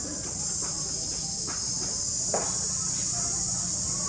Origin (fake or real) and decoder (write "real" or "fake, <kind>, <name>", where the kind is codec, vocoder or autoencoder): real